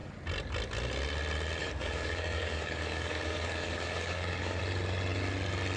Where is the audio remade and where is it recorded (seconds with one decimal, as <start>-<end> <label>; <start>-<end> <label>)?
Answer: 0.0-1.6 recorded; 1.6-4.6 remade; 4.6-5.8 recorded